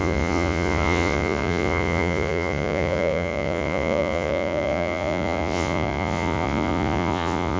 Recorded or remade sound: remade